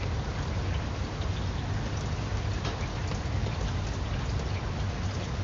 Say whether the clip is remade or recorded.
recorded